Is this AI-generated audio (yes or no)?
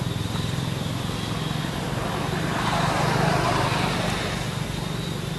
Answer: no